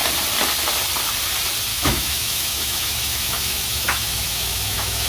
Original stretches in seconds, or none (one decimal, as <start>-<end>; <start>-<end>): 0.0-1.7